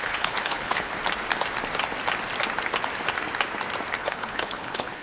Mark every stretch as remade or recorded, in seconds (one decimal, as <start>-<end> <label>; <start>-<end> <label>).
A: 0.0-0.9 remade; 0.9-3.9 recorded; 3.9-5.0 remade